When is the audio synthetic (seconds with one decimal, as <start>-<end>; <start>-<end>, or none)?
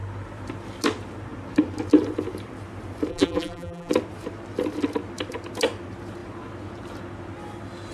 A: 3.1-3.9